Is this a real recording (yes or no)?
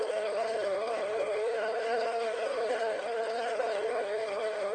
no